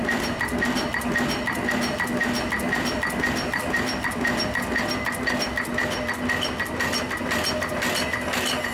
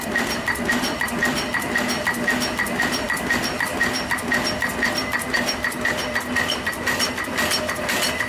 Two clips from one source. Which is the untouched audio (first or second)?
first